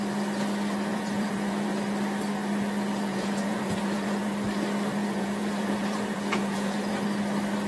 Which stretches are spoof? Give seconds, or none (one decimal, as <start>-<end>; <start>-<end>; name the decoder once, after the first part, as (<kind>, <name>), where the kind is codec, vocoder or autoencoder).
0.9-1.7 (vocoder, Vocos); 3.1-4.3; 5.0-6.9